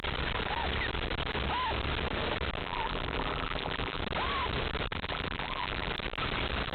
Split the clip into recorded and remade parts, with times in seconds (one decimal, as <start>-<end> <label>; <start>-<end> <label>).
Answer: 0.0-2.6 recorded; 2.6-4.0 remade; 4.0-4.9 recorded; 4.9-5.9 remade; 5.9-6.7 recorded